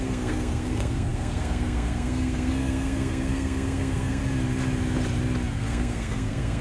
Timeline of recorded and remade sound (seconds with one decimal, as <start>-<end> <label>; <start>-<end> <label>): 0.0-4.2 remade; 4.2-5.5 recorded; 5.5-6.6 remade